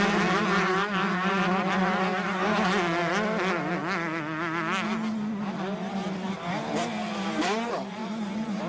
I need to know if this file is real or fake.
real